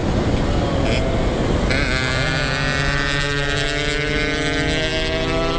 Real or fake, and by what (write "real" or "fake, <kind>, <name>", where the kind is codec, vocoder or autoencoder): real